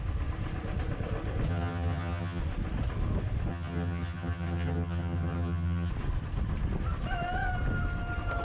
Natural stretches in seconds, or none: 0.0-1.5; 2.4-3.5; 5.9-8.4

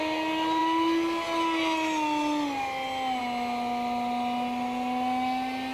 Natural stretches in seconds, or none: 0.0-5.7

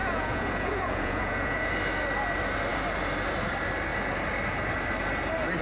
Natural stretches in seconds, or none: 1.7-5.6

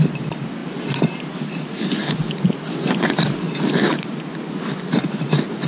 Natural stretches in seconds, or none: 0.0-5.7

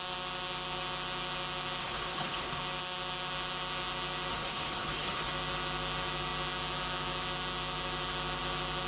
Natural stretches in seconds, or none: 0.0-1.8; 2.6-4.3; 5.3-8.9